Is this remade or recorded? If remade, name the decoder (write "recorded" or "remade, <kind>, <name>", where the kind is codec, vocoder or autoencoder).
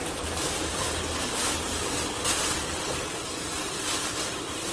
recorded